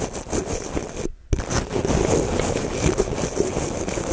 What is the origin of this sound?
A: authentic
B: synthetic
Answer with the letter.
A